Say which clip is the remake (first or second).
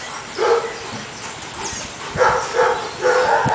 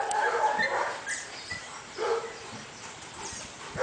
second